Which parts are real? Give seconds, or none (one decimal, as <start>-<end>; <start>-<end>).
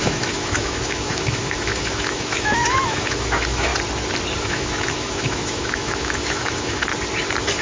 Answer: 3.7-4.4; 6.8-7.6